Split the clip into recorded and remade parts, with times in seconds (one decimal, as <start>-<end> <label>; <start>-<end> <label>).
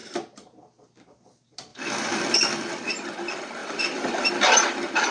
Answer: 0.0-0.6 remade; 0.6-1.7 recorded; 1.7-2.2 remade; 2.2-3.6 recorded; 3.6-4.3 remade; 4.3-5.1 recorded